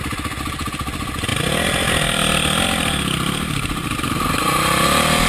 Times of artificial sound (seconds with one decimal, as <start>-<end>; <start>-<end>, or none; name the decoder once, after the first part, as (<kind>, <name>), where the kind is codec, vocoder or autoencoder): none